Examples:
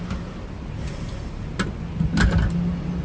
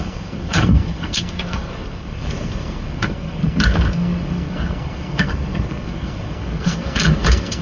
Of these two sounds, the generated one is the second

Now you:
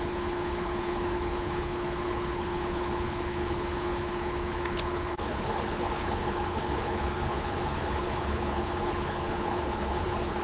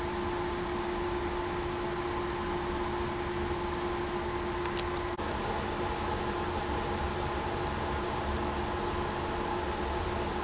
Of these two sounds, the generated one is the first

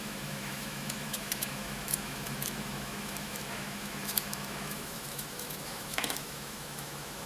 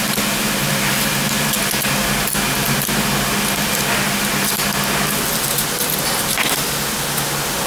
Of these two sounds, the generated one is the first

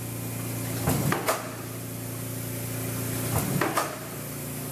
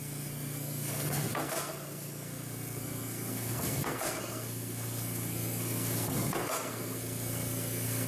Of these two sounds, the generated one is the second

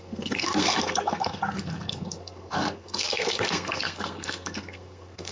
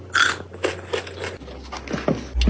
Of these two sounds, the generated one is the first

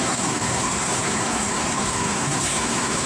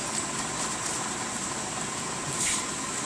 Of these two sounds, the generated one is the first